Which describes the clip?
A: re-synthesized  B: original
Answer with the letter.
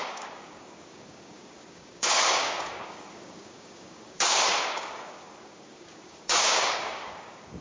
A